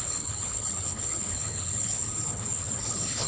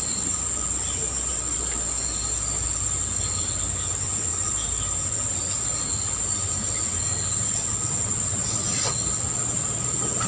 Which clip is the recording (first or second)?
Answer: second